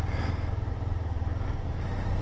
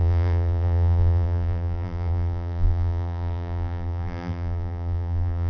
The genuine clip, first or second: first